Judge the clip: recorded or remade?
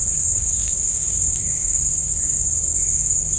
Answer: remade